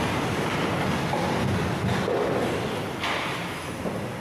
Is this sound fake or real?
real